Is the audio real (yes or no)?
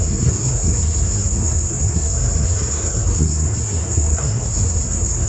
no